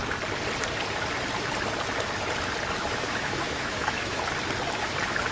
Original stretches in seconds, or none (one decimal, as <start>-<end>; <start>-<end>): 0.0-2.8; 4.2-5.3